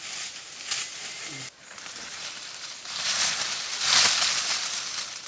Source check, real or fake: real